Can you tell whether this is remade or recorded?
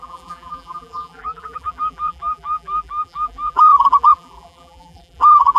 remade